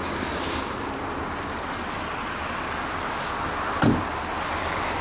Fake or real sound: real